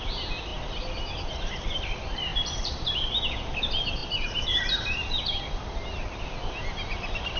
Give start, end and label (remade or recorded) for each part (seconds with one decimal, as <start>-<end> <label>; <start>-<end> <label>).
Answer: 0.0-2.3 recorded; 2.3-2.9 remade; 2.9-4.0 recorded; 4.0-5.4 remade; 5.4-7.4 recorded